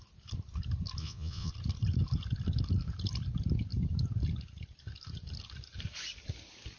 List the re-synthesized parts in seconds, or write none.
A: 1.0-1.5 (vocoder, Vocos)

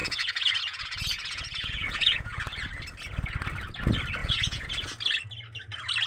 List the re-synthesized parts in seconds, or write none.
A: 0.0-2.4 (vocoder, Vocos); 4.2-4.7

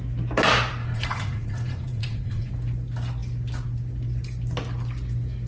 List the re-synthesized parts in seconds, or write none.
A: 0.8-2.5 (vocoder, Vocos)

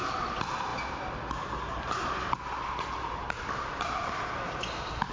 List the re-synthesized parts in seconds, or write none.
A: none

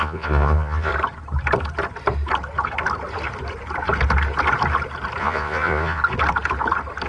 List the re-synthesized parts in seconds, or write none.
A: 0.0-0.9 (vocoder, Vocos); 5.2-6.0

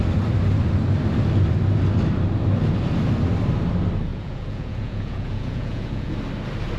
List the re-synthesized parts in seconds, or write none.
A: 4.1-6.1 (vocoder, Vocos)